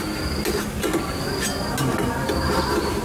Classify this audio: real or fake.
real